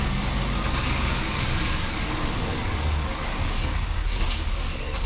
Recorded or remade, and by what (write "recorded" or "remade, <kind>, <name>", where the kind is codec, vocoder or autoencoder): remade, codec, DAC